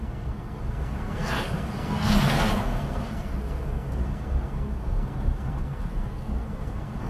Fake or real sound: fake